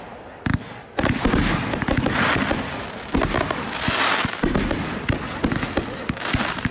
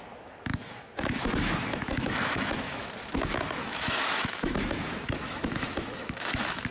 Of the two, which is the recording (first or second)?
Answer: first